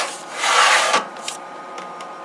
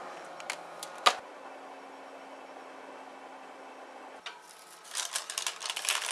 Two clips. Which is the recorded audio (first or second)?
second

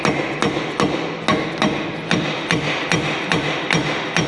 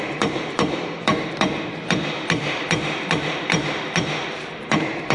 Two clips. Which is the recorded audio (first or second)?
first